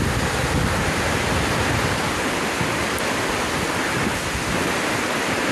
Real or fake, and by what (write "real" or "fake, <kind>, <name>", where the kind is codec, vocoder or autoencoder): real